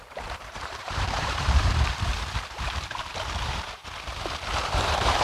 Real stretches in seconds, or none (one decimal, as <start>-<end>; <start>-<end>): 2.1-3.1; 3.8-4.4